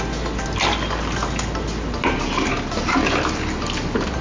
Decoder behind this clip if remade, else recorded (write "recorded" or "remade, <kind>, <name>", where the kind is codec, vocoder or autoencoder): recorded